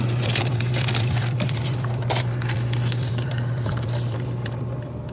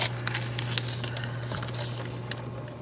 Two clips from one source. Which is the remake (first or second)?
first